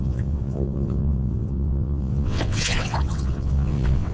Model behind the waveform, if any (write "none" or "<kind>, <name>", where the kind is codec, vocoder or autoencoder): vocoder, WaveNeXt